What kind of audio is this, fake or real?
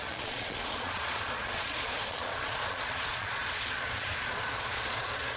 fake